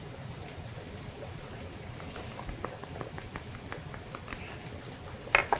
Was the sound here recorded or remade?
recorded